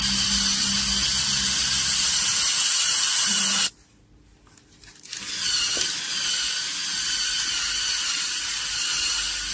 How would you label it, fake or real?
real